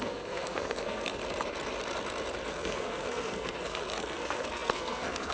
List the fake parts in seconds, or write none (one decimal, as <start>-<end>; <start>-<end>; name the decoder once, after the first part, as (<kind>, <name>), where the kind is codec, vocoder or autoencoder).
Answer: 0.0-1.2 (codec, SNAC); 2.5-5.3